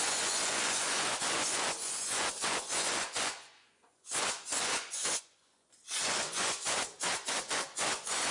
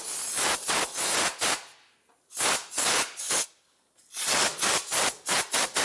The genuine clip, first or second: second